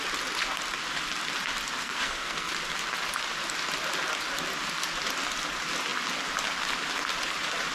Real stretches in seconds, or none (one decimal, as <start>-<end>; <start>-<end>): 0.0-1.8; 2.5-7.7

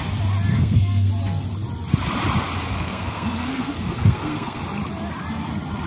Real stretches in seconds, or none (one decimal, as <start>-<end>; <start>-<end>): 0.0-0.5; 1.1-2.7; 4.6-5.9

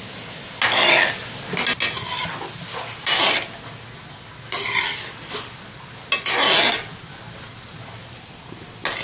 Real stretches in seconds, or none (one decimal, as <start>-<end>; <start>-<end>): 0.0-9.0

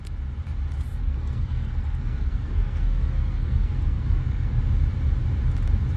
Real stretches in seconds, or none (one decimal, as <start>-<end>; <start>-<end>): 0.0-1.0; 4.6-6.0